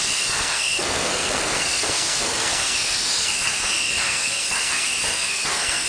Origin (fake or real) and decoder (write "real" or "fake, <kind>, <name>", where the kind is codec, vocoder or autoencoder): fake, codec, SNAC